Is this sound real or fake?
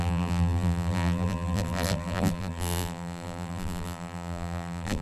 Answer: fake